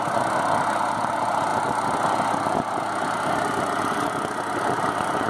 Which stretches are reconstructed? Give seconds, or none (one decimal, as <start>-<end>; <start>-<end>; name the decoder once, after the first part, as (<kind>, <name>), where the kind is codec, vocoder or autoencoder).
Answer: none